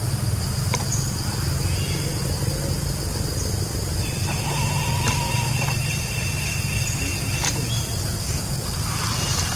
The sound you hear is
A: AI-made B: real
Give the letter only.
B